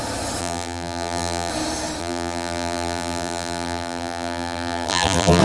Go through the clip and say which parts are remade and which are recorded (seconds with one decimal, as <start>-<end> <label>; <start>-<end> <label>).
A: 0.0-0.4 recorded; 0.4-1.5 remade; 1.5-2.0 recorded; 2.0-5.4 remade